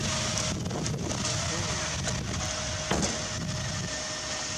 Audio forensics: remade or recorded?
recorded